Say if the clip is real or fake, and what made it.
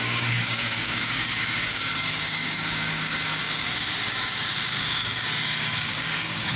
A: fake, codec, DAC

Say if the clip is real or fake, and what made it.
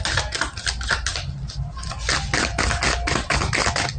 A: real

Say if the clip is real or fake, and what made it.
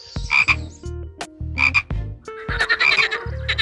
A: real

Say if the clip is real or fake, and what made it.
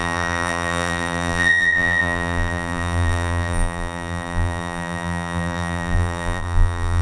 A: fake, vocoder, BigVGAN v2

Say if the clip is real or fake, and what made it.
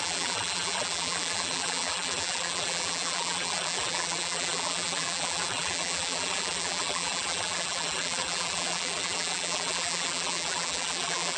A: fake, vocoder, BigVGAN v2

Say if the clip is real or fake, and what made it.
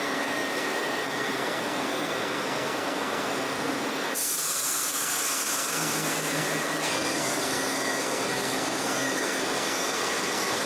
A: fake, codec, SNAC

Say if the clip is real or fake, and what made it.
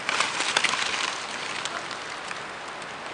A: real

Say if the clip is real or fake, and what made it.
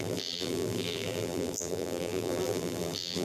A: fake, vocoder, BigVGAN v2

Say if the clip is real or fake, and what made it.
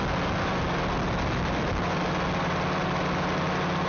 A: real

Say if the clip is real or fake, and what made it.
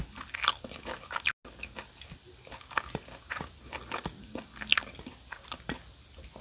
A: real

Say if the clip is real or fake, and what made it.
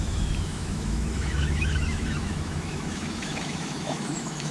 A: fake, autoencoder, DAC-VAE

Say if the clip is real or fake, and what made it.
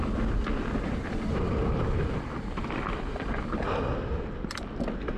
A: real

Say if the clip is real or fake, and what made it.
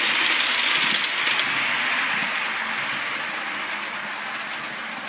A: real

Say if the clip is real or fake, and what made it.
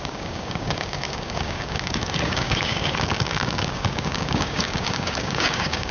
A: fake, codec, DAC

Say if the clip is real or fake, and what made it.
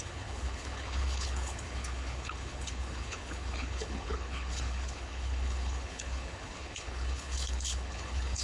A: fake, codec, HILCodec